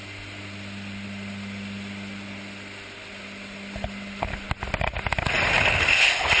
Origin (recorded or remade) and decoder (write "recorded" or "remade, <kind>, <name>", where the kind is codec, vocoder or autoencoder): recorded